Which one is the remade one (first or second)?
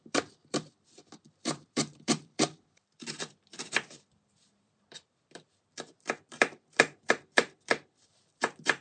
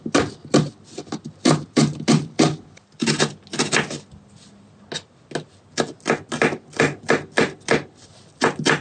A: first